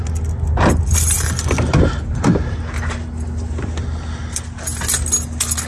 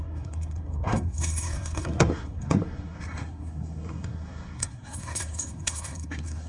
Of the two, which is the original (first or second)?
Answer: first